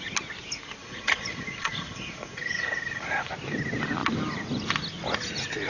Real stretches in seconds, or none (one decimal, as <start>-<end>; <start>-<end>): 0.0-0.8; 3.3-5.7